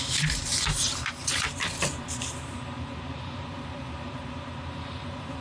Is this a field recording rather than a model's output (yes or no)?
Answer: no